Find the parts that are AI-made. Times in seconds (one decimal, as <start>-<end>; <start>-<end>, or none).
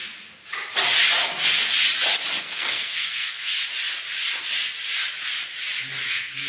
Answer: 2.4-3.5; 6.1-6.5